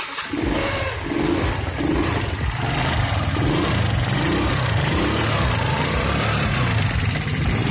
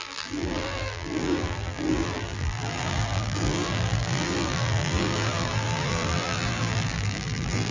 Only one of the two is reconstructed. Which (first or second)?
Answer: second